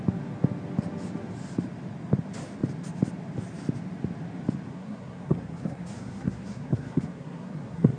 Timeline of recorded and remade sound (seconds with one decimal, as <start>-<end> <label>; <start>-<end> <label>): 0.0-4.7 recorded; 4.7-8.0 remade